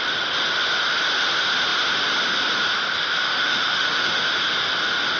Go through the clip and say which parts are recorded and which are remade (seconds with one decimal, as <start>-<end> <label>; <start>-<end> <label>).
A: 0.0-3.2 recorded; 3.2-4.1 remade; 4.1-5.2 recorded